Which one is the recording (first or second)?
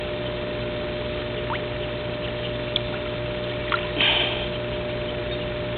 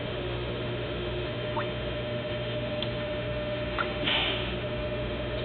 first